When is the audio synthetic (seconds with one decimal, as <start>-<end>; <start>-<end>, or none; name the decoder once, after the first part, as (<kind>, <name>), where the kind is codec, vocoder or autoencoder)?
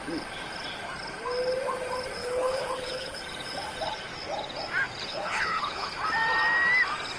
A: 2.2-3.2 (codec, HILCodec); 5.1-5.9